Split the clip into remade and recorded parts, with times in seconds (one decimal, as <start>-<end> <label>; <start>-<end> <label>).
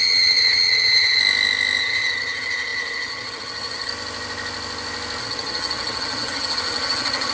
0.0-1.2 remade; 1.2-1.8 recorded; 1.8-3.9 remade; 3.9-5.2 recorded; 5.2-7.3 remade